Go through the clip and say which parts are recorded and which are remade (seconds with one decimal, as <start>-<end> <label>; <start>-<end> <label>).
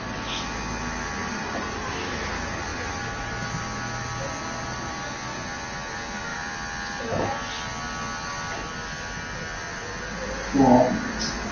0.0-11.5 recorded